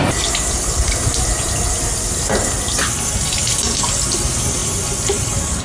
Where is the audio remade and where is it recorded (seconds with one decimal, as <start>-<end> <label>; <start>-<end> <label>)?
0.0-5.6 recorded

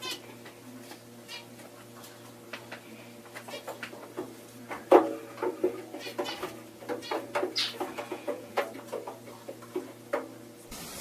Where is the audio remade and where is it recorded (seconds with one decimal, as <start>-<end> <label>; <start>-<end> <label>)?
0.0-8.1 recorded; 8.1-8.6 remade; 8.6-11.0 recorded

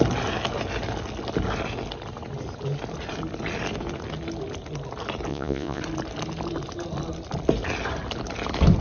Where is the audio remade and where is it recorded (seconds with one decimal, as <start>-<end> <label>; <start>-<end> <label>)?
0.0-5.3 recorded; 5.3-5.8 remade; 5.8-8.8 recorded

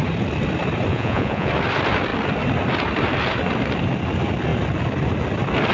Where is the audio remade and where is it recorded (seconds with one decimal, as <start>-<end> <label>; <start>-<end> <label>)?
0.0-0.9 recorded; 0.9-1.5 remade; 1.5-5.7 recorded

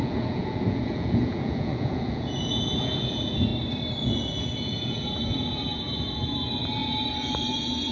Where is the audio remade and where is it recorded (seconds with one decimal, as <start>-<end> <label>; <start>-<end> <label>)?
0.0-3.5 remade; 3.5-4.0 recorded; 4.0-7.9 remade